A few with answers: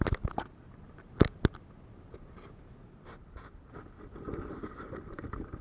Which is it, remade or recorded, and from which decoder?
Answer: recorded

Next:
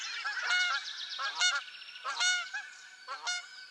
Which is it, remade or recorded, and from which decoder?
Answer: recorded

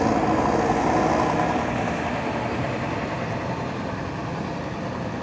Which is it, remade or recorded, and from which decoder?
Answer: recorded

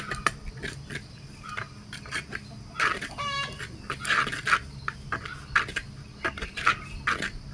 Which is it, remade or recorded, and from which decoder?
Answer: recorded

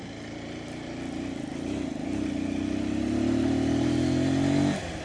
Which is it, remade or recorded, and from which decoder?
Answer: recorded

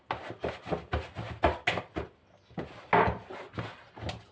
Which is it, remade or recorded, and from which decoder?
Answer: recorded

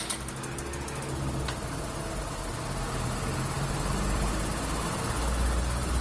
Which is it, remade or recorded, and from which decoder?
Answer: recorded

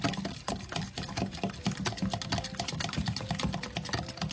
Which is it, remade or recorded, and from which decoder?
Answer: recorded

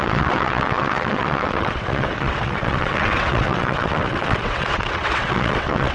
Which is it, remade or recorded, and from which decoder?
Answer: remade, vocoder, WaveNeXt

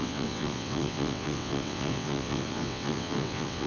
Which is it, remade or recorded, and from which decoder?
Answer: remade, vocoder, WaveNeXt